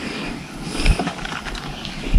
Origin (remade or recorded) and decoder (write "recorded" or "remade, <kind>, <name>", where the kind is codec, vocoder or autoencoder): remade, codec, DAC